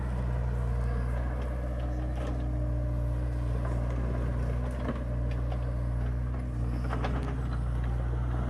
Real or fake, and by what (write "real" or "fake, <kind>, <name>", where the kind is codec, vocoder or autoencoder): real